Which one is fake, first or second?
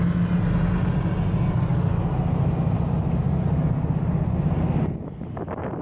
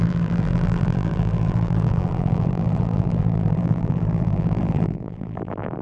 second